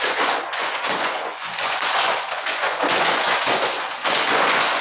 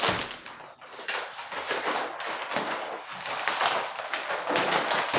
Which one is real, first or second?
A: second